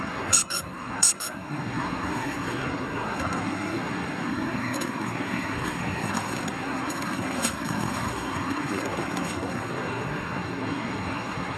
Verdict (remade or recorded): remade